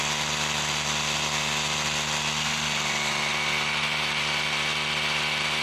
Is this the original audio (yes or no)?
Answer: yes